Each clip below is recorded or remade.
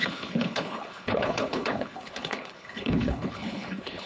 remade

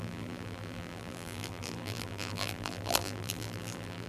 remade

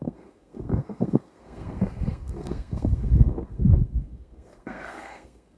remade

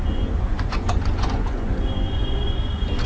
remade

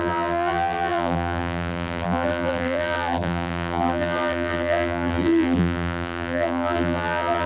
remade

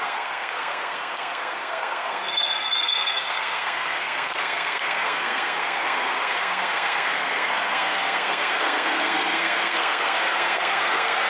remade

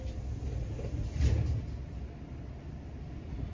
recorded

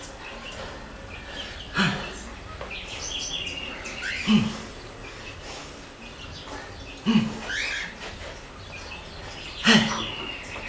recorded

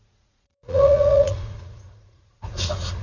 remade